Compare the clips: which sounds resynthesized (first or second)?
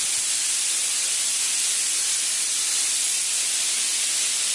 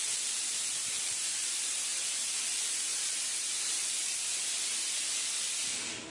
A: second